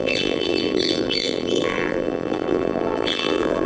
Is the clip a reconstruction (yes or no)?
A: yes